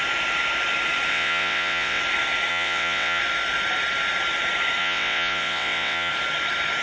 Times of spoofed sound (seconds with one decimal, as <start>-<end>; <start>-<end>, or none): 1.1-2.0; 2.5-3.2; 4.8-6.1